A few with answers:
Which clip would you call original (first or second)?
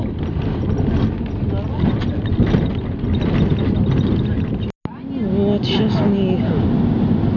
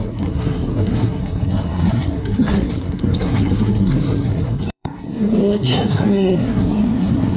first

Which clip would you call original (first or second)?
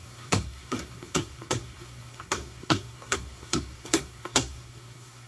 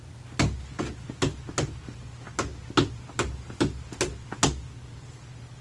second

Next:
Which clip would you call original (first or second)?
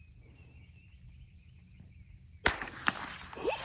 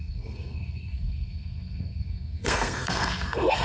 first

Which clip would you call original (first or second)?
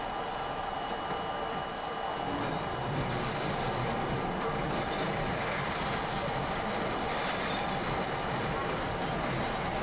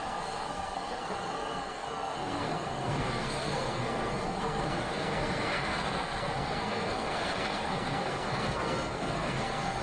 first